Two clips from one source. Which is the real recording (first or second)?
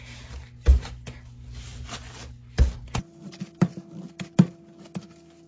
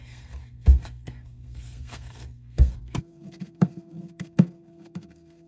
first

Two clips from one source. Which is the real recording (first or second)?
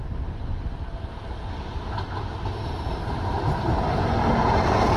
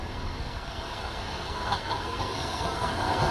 first